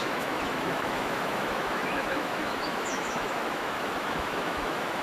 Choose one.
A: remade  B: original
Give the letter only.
A